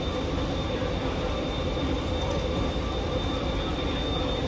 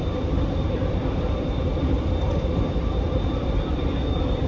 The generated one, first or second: second